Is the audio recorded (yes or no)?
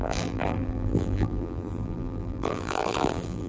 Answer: no